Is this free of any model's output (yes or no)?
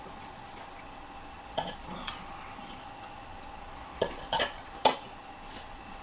no